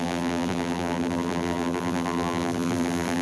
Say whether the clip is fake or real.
fake